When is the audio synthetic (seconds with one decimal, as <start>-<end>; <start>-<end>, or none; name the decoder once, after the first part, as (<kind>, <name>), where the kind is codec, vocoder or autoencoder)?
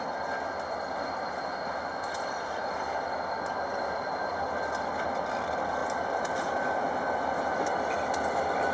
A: none